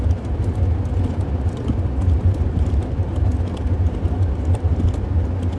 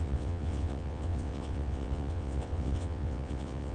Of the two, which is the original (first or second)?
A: first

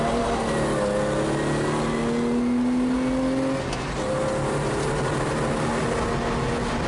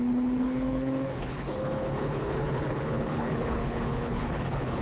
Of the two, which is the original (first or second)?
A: first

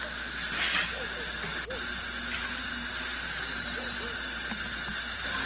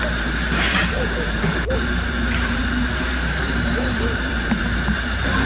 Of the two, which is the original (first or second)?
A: first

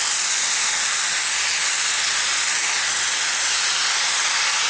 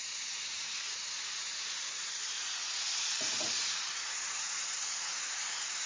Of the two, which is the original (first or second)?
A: first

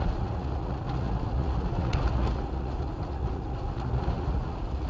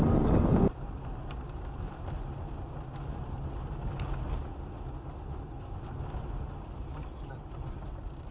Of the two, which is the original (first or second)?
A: second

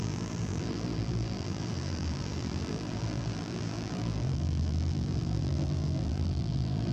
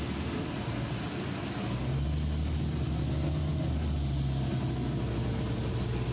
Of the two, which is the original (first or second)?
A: second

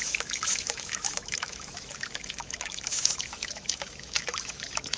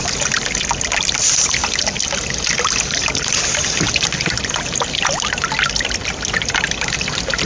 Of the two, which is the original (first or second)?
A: second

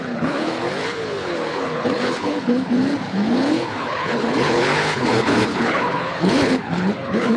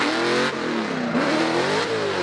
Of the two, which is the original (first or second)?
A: second